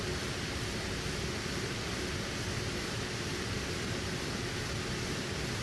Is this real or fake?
real